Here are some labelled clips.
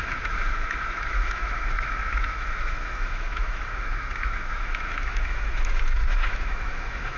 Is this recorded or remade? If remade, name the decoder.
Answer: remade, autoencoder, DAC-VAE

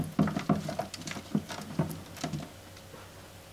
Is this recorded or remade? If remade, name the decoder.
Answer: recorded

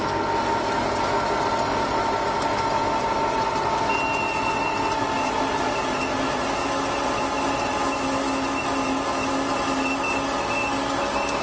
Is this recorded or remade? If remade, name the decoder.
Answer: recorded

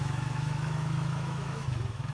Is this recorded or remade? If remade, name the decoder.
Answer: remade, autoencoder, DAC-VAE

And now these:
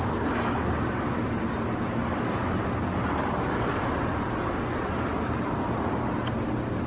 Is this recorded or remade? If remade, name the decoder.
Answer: recorded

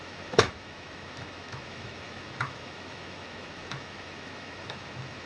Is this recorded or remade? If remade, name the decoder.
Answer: remade, autoencoder, DAC-VAE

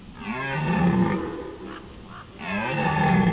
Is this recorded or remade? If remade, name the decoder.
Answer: recorded